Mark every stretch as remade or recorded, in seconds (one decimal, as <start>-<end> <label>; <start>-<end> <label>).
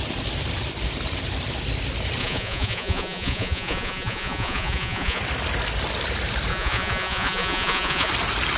0.0-2.2 recorded; 2.2-5.2 remade; 5.2-6.5 recorded; 6.5-8.1 remade; 8.1-8.6 recorded